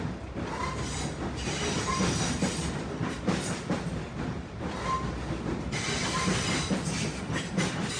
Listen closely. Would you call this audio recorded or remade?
recorded